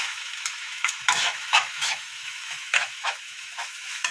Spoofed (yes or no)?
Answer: yes